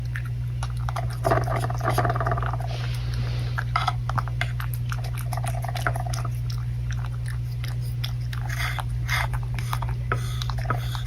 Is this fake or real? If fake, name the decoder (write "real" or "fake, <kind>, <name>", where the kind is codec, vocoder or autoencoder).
real